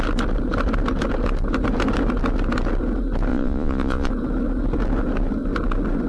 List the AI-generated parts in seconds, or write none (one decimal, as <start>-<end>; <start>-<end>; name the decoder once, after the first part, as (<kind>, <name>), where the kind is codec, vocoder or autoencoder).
3.3-4.1 (vocoder, Vocos)

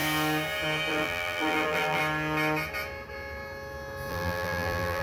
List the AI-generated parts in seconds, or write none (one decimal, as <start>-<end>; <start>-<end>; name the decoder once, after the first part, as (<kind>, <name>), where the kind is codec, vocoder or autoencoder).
0.9-2.0 (vocoder, BigVGAN v2); 4.1-5.0

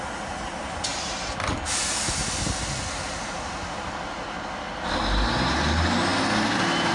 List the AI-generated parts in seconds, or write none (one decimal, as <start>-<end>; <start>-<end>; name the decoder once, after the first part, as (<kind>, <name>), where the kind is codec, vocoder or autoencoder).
none